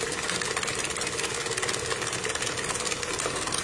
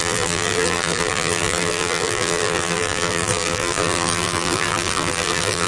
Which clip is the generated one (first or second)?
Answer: second